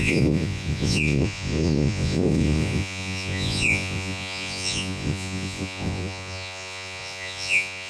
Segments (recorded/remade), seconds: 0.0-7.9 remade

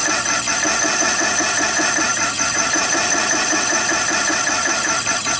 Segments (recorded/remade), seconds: 0.0-1.0 recorded; 1.0-5.4 remade

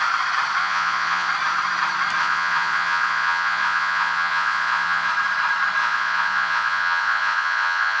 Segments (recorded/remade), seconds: 0.0-0.6 recorded; 0.6-1.3 remade; 1.3-2.2 recorded; 2.2-5.1 remade; 5.1-5.8 recorded; 5.8-8.0 remade

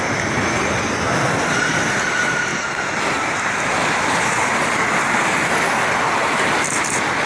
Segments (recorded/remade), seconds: 0.0-7.3 recorded